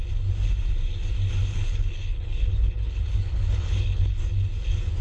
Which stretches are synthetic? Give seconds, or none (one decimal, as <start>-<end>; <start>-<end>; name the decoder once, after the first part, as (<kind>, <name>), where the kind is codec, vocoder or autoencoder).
1.4-4.2 (codec, HILCodec)